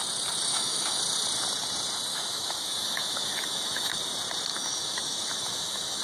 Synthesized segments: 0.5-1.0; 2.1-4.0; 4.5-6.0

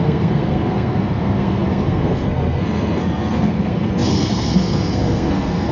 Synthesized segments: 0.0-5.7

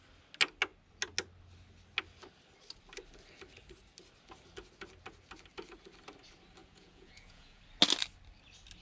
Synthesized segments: 6.6-7.6

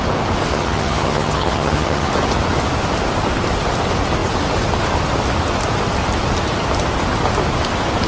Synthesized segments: 0.5-2.1